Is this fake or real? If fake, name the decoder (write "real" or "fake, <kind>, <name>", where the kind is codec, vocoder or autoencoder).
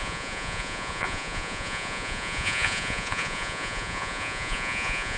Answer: fake, vocoder, Vocos